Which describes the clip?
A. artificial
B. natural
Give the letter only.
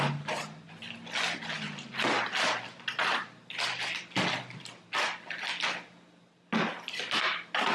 B